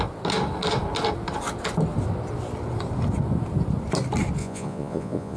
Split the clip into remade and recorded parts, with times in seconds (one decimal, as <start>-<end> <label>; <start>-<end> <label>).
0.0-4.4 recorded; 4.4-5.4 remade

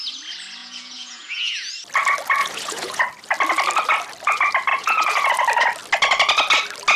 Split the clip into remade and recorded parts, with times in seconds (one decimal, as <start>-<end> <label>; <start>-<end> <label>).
0.0-0.6 recorded; 0.6-1.7 remade; 1.7-2.4 recorded; 2.4-3.0 remade; 3.0-4.7 recorded; 4.7-5.3 remade; 5.3-7.0 recorded

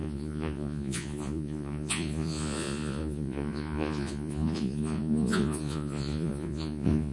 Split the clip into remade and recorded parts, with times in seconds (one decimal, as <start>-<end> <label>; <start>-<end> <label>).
0.0-7.1 remade